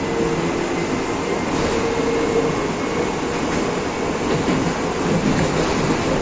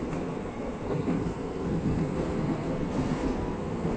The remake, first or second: second